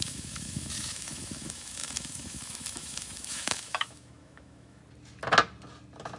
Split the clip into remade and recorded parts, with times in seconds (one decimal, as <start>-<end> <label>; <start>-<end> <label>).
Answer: 0.0-4.8 remade; 4.8-6.2 recorded